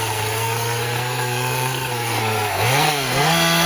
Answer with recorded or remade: remade